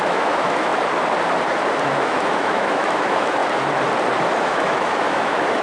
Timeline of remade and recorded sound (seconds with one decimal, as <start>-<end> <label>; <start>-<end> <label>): 0.0-0.7 remade; 0.7-1.8 recorded; 1.8-3.4 remade; 3.4-4.4 recorded; 4.4-5.6 remade